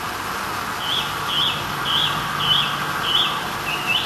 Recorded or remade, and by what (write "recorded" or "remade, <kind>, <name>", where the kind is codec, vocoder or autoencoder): recorded